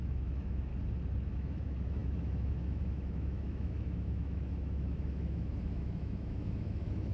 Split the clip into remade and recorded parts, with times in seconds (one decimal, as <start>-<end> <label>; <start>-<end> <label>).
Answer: 0.0-0.7 remade; 0.7-1.3 recorded; 1.3-7.1 remade